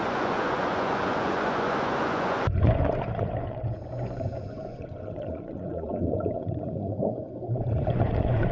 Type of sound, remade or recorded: remade